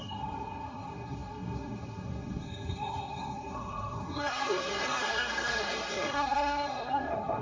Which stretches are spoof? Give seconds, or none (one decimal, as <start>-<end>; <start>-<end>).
0.0-7.4